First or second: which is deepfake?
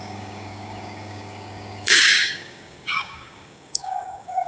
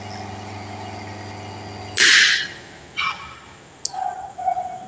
first